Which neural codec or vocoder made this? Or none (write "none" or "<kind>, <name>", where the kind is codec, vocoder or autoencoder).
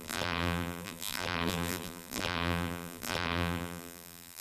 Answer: vocoder, BigVGAN v2